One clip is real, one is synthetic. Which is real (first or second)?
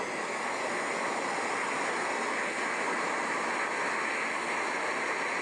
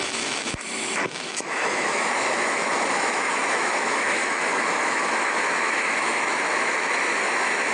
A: first